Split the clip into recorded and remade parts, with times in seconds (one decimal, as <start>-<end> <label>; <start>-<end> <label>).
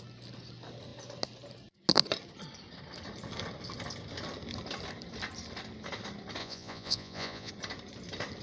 0.0-6.4 recorded; 6.4-7.5 remade; 7.5-8.4 recorded